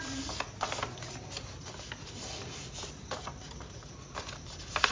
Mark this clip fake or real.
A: real